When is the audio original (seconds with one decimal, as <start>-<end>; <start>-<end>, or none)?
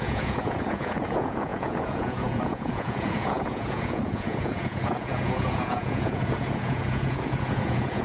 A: none